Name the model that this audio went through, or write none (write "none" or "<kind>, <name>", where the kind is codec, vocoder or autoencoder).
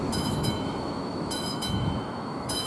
autoencoder, DAC-VAE